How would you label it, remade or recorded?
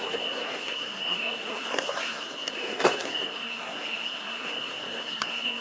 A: remade